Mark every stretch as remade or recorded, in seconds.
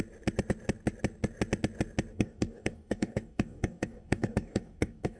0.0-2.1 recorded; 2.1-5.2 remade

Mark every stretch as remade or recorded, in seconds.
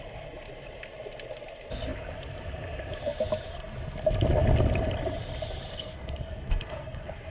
0.0-5.7 recorded; 5.7-7.3 remade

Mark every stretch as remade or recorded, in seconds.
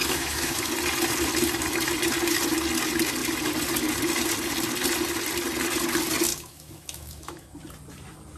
0.0-0.7 remade; 0.7-6.3 recorded; 6.3-7.6 remade; 7.6-8.4 recorded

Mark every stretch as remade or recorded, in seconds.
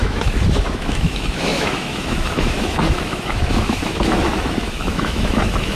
0.0-5.7 remade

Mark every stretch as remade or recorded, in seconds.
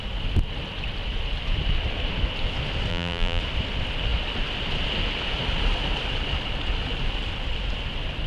0.0-2.9 recorded; 2.9-3.4 remade; 3.4-8.3 recorded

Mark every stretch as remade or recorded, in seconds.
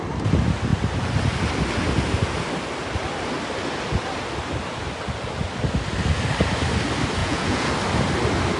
0.0-7.2 recorded; 7.2-7.7 remade; 7.7-8.6 recorded